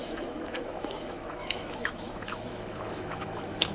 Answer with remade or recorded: remade